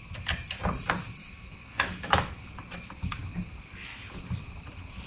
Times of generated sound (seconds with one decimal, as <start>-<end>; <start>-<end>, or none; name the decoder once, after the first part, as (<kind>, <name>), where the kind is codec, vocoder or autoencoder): 1.2-2.5 (autoencoder, DAC-VAE)